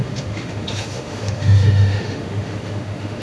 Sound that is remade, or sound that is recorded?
remade